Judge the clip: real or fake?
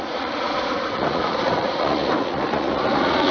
fake